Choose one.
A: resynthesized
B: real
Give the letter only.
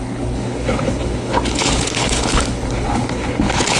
A